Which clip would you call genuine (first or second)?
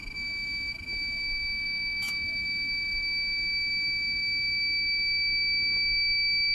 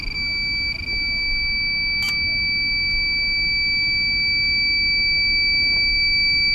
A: second